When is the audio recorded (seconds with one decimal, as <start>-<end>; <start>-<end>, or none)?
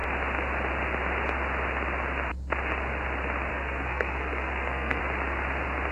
0.0-3.5; 5.0-5.9